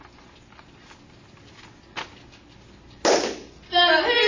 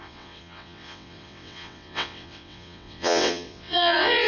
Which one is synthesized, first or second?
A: second